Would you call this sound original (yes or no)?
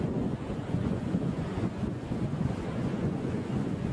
no